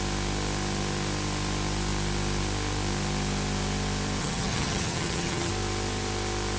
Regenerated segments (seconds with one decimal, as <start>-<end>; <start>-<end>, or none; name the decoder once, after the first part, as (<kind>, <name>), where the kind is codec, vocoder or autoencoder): 4.2-5.5 (vocoder, HiFi-GAN)